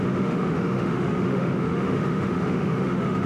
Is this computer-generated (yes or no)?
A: yes